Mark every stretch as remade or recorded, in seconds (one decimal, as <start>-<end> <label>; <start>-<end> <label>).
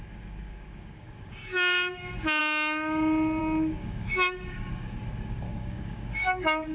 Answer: 0.0-2.4 remade; 2.4-3.4 recorded; 3.4-6.7 remade